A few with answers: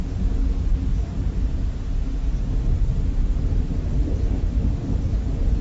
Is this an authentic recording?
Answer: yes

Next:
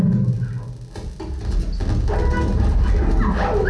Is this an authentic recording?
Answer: yes